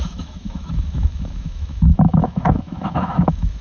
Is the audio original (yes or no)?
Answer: no